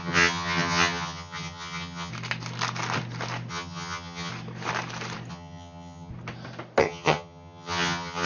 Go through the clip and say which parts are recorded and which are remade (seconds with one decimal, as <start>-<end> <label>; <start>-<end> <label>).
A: 0.0-2.1 remade; 2.1-3.5 recorded; 3.5-4.3 remade; 4.3-5.3 recorded; 5.3-6.1 remade; 6.1-6.8 recorded; 6.8-8.3 remade